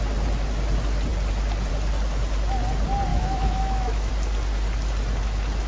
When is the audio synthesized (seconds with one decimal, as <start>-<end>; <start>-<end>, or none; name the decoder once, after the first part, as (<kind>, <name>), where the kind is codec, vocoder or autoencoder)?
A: 3.1-4.1 (autoencoder, DAC-VAE)